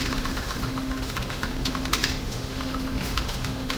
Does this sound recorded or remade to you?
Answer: remade